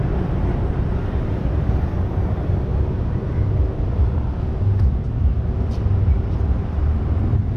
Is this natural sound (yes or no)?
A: yes